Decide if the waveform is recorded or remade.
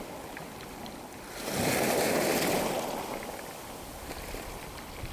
recorded